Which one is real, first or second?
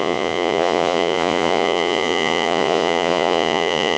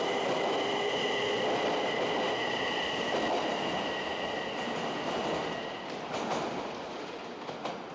second